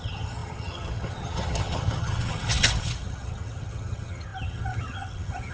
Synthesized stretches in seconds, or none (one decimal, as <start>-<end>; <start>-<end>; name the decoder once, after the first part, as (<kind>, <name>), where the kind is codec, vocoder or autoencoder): 0.0-5.5 (vocoder, HiFi-GAN)